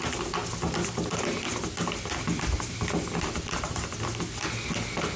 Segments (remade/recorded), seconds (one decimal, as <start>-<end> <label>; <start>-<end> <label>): 0.0-5.2 recorded